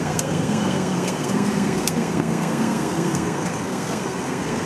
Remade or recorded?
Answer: remade